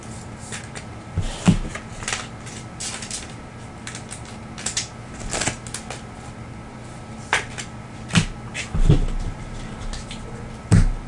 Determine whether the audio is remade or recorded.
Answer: recorded